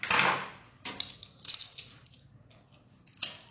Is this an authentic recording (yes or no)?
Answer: yes